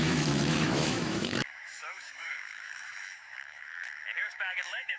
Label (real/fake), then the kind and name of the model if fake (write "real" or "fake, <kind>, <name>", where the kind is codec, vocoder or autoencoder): fake, autoencoder, DAC-VAE